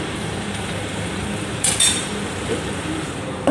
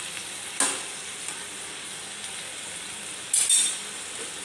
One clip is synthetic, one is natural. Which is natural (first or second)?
second